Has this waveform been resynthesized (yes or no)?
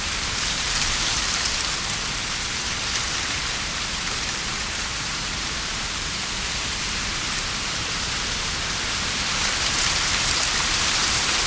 yes